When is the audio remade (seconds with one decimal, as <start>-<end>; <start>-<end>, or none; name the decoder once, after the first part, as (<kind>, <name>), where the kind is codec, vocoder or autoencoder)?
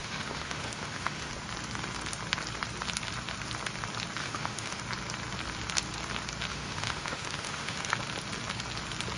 0.0-1.3 (autoencoder, DAC-VAE); 4.2-4.8; 6.5-7.9